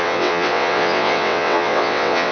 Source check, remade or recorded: remade